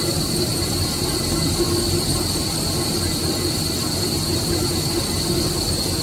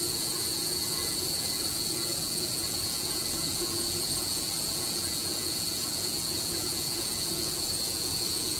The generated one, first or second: second